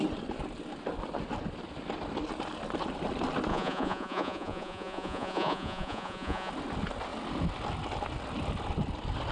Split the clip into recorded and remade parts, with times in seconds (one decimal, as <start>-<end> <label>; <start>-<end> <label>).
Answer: 0.0-3.5 recorded; 3.5-6.5 remade; 6.5-9.3 recorded